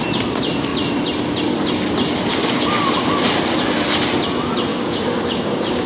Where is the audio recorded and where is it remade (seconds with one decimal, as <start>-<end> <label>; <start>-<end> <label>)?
0.0-4.7 recorded; 4.7-5.9 remade